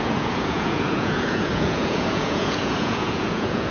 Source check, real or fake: fake